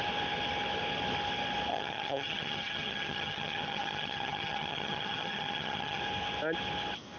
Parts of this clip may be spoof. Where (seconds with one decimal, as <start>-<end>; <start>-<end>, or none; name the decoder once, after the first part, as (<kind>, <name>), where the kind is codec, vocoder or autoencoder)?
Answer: 1.7-6.0 (vocoder, HiFi-GAN)